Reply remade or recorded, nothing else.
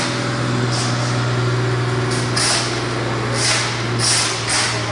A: recorded